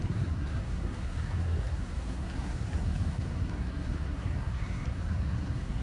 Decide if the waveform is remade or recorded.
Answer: remade